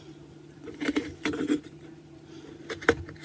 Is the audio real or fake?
fake